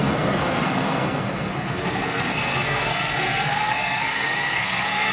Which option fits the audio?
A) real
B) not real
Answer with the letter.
B